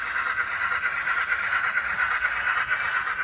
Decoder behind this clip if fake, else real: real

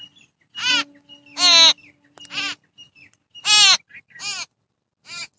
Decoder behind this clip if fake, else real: real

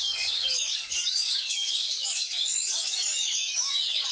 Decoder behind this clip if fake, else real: fake, codec, DAC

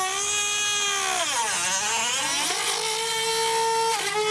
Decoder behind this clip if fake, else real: real